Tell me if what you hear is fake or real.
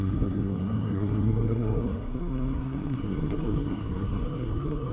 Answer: fake